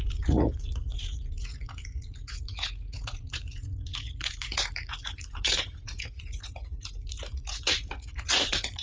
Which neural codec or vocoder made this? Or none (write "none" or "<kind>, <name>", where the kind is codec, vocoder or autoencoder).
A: vocoder, Vocos